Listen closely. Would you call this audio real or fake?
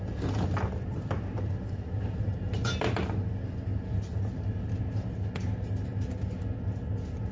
fake